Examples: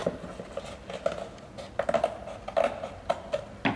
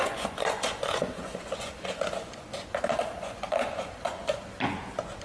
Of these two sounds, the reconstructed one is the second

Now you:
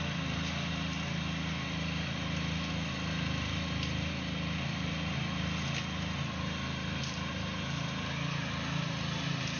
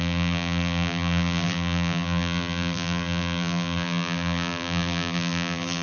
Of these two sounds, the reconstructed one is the second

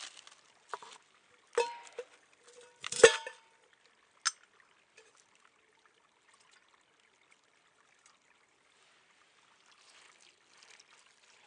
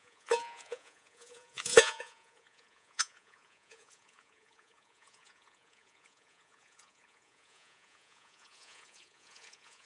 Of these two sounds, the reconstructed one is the second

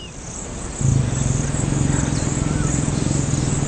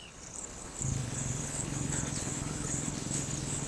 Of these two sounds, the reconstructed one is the second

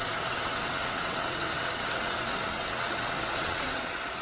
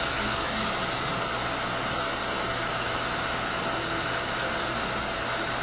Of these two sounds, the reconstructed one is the first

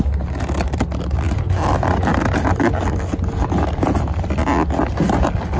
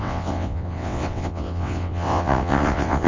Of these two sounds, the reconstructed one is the second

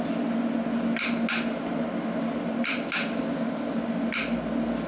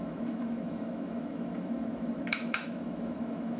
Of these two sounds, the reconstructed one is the second